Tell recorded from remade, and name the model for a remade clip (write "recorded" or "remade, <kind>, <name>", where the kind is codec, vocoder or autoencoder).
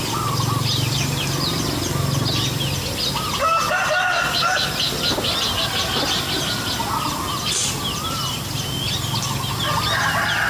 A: recorded